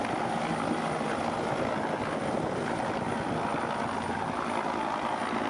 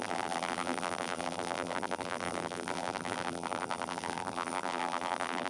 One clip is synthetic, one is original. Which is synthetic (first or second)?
second